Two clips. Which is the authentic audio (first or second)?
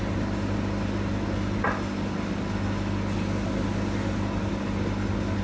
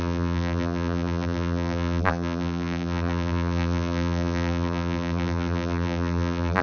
first